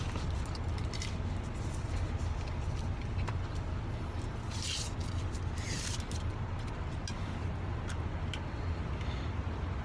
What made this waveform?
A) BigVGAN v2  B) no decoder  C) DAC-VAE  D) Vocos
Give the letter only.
B